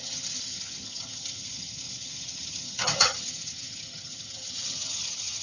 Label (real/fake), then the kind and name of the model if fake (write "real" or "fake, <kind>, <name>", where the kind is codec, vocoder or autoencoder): fake, vocoder, HiFi-GAN